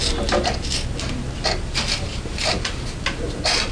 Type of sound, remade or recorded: recorded